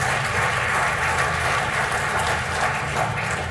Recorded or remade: recorded